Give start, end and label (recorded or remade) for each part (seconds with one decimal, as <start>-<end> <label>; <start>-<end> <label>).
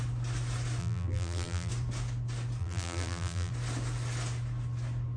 0.0-0.8 recorded; 0.8-1.7 remade; 1.7-2.6 recorded; 2.6-3.5 remade; 3.5-5.2 recorded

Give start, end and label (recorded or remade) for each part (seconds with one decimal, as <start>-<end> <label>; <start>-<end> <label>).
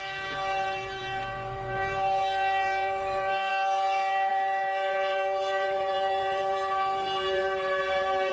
0.0-8.3 remade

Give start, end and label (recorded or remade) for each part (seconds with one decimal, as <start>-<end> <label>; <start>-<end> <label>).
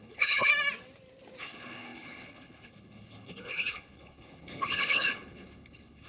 0.0-0.5 remade; 0.5-1.4 recorded; 1.4-6.1 remade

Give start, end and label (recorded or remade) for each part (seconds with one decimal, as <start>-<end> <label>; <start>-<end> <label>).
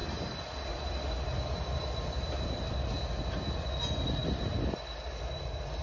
0.0-5.8 recorded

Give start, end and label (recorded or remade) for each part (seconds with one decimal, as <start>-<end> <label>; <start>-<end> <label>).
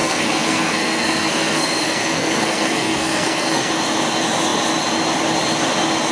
0.0-3.7 remade; 3.7-6.1 recorded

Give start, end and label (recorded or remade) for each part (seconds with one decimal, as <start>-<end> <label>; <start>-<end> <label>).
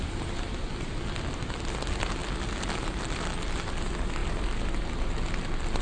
0.0-5.8 recorded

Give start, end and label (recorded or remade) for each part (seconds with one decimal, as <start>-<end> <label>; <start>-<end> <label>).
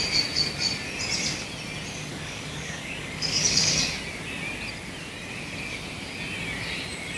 0.0-2.1 recorded; 2.1-3.7 remade; 3.7-7.2 recorded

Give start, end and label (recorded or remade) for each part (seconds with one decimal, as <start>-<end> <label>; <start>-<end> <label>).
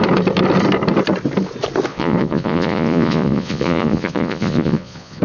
0.0-1.9 recorded; 1.9-5.2 remade